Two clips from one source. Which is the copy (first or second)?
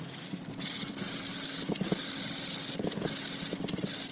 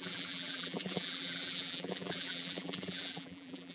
second